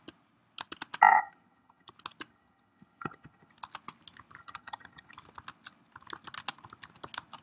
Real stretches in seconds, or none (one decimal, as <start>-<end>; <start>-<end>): 0.0-1.1; 1.9-2.3; 3.5-4.4; 5.1-7.4